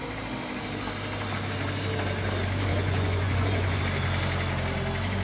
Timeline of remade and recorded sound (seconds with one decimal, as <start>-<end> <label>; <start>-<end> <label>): 0.0-2.7 recorded; 2.7-3.8 remade; 3.8-5.2 recorded